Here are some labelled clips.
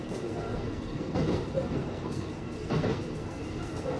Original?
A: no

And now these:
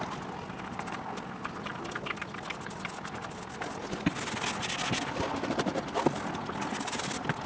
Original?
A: yes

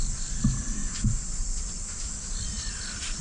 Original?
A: yes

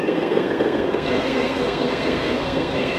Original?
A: no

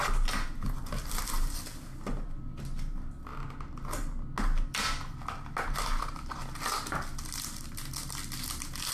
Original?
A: yes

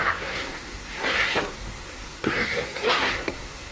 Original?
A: no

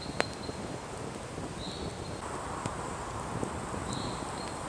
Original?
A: yes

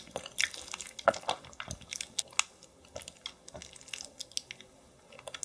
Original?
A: yes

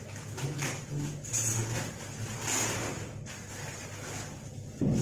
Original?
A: yes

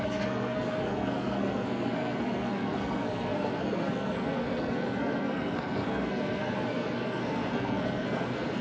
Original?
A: no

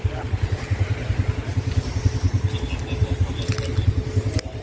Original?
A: yes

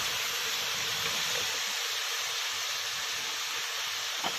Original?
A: yes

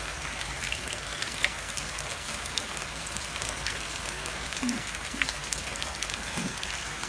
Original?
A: no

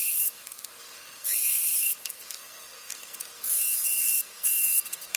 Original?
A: no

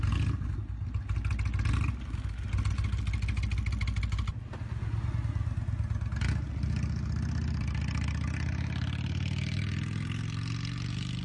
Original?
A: yes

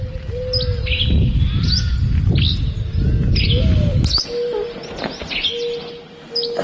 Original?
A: yes